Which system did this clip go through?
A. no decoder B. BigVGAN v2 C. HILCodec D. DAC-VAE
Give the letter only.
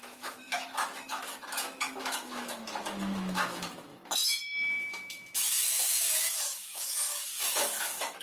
D